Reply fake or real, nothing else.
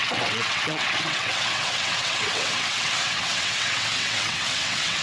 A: fake